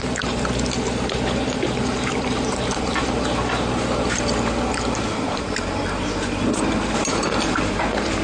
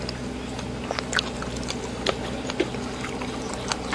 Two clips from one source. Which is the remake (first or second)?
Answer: first